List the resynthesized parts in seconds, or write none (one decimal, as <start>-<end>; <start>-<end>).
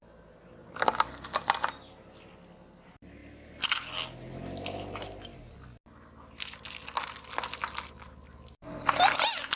none